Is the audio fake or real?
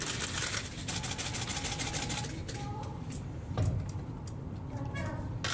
real